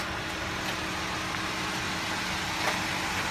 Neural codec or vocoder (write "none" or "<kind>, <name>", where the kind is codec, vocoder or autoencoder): none